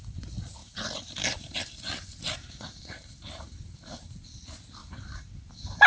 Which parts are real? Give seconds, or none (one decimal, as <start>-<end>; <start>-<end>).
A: 0.0-0.6; 4.1-4.8